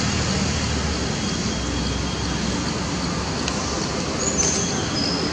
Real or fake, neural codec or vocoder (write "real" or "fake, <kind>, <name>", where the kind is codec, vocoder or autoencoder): real